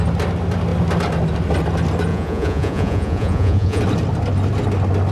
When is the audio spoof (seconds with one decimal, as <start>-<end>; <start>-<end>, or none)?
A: 2.1-3.8